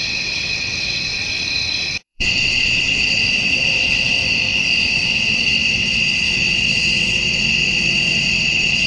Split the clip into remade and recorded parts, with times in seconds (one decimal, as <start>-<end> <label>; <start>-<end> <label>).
0.0-1.1 remade; 1.1-2.0 recorded; 2.0-4.2 remade; 4.2-4.9 recorded; 4.9-8.9 remade

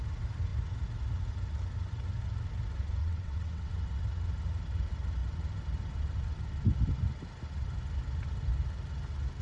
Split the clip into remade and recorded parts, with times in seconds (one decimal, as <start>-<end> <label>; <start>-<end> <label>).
0.0-3.0 recorded; 3.0-3.7 remade; 3.7-9.4 recorded

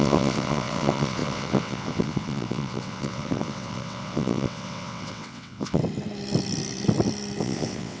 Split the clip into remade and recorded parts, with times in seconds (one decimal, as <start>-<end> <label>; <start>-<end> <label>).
0.0-5.8 remade; 5.8-7.4 recorded; 7.4-8.0 remade

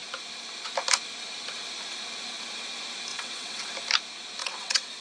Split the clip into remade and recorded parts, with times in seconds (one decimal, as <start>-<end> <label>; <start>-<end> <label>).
0.0-3.1 recorded; 3.1-3.7 remade; 3.7-4.4 recorded; 4.4-5.0 remade

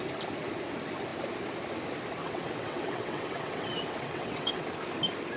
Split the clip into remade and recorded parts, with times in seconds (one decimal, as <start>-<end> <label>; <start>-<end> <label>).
0.0-2.2 recorded; 2.2-4.6 remade; 4.6-5.4 recorded

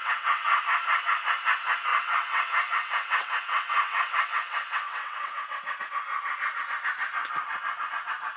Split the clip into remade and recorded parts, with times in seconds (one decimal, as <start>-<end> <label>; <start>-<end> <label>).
0.0-0.6 remade; 0.6-1.9 recorded; 1.9-5.8 remade; 5.8-8.4 recorded